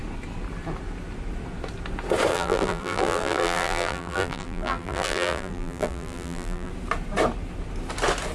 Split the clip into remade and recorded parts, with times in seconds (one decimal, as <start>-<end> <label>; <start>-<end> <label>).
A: 0.0-2.3 recorded; 2.3-6.7 remade; 6.7-8.3 recorded